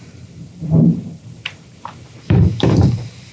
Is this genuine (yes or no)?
no